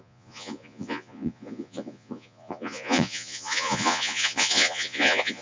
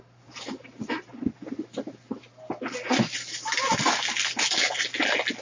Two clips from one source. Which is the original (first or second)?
second